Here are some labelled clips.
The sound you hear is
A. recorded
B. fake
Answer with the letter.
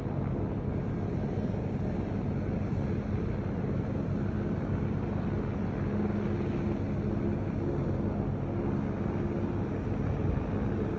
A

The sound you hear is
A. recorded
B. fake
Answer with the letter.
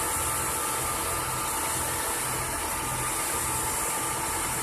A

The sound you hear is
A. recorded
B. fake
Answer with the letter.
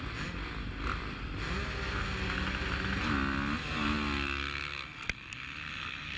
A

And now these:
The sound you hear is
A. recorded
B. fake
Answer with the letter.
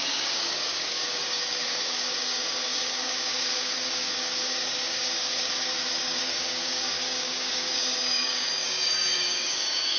B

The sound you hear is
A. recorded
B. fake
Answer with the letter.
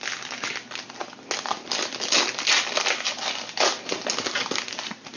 A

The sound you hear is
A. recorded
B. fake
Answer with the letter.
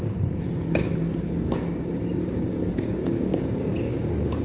B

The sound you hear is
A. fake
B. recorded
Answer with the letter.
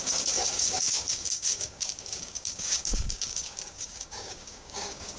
A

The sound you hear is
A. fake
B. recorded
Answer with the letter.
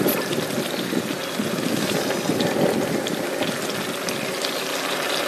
B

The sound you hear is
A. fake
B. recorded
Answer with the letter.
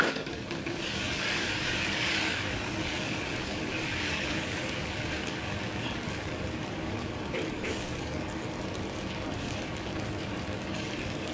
A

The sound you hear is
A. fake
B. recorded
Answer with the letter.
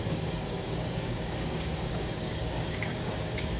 A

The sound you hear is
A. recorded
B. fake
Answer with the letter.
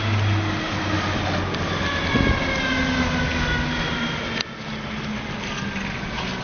A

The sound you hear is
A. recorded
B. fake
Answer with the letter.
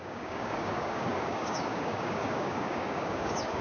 B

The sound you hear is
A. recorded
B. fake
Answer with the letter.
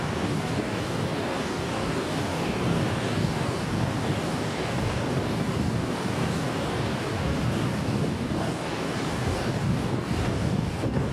B